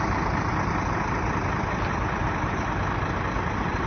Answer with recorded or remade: recorded